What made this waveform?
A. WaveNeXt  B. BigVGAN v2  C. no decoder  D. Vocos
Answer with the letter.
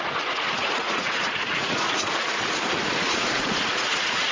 D